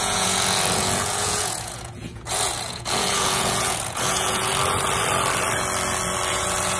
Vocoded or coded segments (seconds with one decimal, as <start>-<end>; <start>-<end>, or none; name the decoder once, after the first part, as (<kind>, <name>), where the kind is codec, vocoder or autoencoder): 0.0-4.5 (vocoder, Vocos); 6.3-6.8